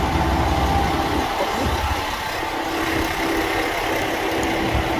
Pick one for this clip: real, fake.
real